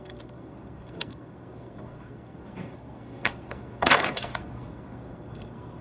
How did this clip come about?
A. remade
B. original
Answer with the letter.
A